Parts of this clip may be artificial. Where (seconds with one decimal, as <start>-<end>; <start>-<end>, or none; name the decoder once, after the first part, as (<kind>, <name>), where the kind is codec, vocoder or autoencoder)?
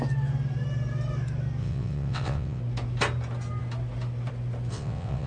1.6-2.6 (vocoder, WaveNeXt); 4.7-5.3